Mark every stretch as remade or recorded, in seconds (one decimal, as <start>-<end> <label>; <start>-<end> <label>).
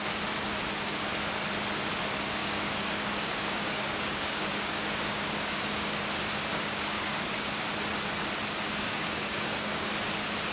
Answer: 0.0-2.4 recorded; 2.4-6.0 remade; 6.0-6.5 recorded; 6.5-7.5 remade; 7.5-8.7 recorded; 8.7-9.9 remade; 9.9-10.5 recorded